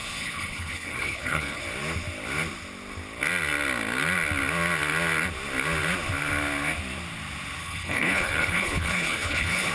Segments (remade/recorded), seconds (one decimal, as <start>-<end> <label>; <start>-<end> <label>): 0.0-1.6 remade; 1.6-7.6 recorded; 7.6-9.7 remade